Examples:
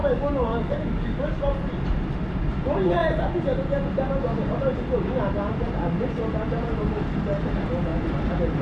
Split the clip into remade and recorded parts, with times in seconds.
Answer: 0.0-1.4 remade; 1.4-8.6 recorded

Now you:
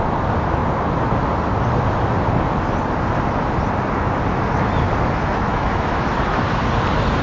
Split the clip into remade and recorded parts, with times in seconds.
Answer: 0.0-5.5 recorded; 5.5-6.6 remade; 6.6-7.2 recorded

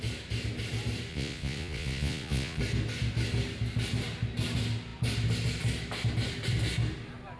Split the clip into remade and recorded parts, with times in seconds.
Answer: 0.0-1.1 recorded; 1.1-2.6 remade; 2.6-7.4 recorded

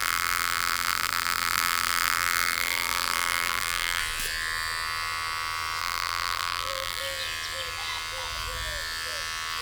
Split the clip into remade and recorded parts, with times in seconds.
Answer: 0.0-4.0 remade; 4.0-5.8 recorded; 5.8-7.0 remade; 7.0-9.6 recorded

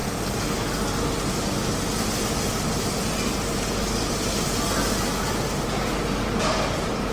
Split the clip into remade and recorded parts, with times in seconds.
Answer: 0.0-7.1 recorded

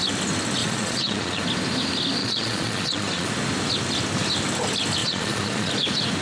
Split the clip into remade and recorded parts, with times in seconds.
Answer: 0.0-0.6 recorded; 0.6-1.4 remade; 1.4-2.2 recorded; 2.2-3.3 remade; 3.3-5.0 recorded; 5.0-5.7 remade; 5.7-6.2 recorded

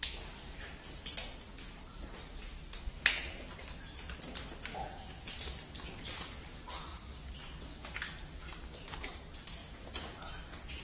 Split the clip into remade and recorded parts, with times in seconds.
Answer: 0.0-4.7 recorded; 4.7-5.4 remade; 5.4-9.6 recorded; 9.6-10.2 remade; 10.2-10.8 recorded